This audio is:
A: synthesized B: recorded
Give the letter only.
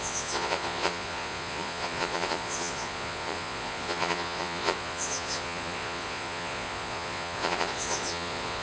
A